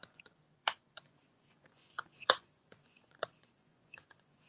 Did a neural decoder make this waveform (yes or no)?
yes